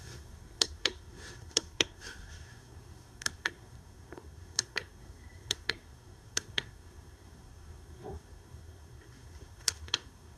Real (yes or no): no